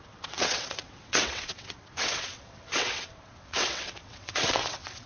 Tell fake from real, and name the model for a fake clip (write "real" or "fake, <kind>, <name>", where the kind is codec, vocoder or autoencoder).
fake, vocoder, WaveNeXt